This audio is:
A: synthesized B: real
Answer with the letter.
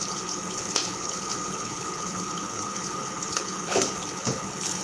A